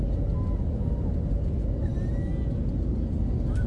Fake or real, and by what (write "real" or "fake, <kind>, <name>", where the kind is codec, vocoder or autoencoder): real